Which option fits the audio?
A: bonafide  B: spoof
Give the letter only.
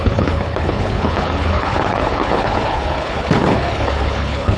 B